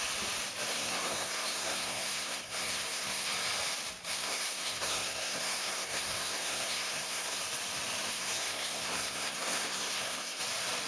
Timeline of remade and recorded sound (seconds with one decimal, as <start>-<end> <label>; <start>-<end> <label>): 0.0-0.7 recorded; 0.7-3.3 remade; 3.3-4.1 recorded; 4.1-7.4 remade; 7.4-8.1 recorded; 8.1-10.4 remade; 10.4-10.9 recorded